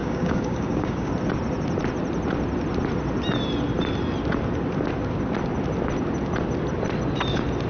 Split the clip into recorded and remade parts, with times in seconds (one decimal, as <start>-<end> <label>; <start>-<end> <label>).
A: 0.0-1.1 remade; 1.1-7.7 recorded